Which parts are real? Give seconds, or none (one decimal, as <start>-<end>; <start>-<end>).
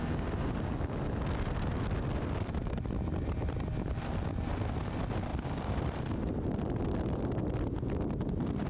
0.0-5.3; 6.4-8.7